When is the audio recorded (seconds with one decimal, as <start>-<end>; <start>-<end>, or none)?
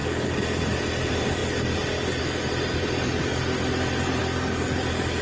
0.0-5.2